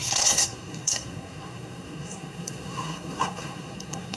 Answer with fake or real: fake